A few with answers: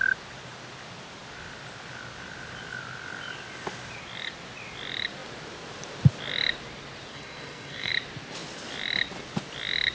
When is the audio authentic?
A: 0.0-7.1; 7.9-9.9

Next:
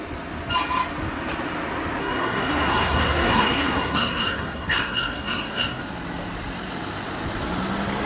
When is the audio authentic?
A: 0.0-2.0; 5.8-8.1

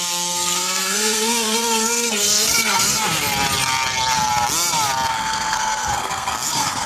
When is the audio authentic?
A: 3.0-5.1